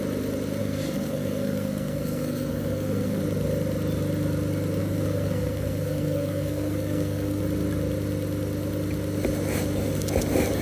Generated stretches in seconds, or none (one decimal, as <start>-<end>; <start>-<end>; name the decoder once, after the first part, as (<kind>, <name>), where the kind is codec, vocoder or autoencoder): 0.6-3.2 (codec, SNAC); 4.8-7.4